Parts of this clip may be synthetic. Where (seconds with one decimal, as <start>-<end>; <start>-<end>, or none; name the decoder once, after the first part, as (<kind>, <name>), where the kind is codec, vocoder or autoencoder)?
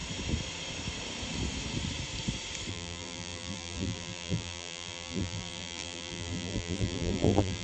2.7-7.6 (vocoder, BigVGAN v2)